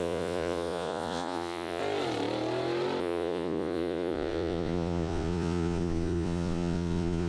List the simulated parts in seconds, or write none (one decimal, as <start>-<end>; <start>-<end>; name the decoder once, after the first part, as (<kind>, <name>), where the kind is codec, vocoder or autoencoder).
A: 0.0-1.8 (vocoder, Vocos); 3.0-7.3